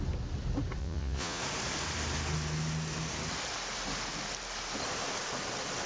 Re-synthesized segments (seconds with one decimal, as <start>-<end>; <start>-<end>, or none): 0.8-1.4